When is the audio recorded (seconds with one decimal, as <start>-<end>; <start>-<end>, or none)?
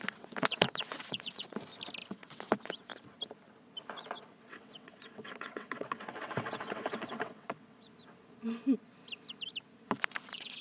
1.6-2.1; 2.9-4.4; 7.9-10.1